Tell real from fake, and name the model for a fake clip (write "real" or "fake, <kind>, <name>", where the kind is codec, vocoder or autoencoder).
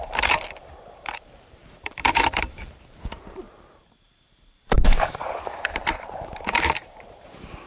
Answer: fake, vocoder, BigVGAN v2